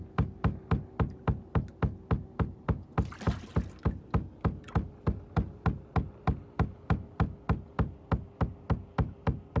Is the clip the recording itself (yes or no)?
yes